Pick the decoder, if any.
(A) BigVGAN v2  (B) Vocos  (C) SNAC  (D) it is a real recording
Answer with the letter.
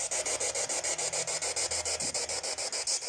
D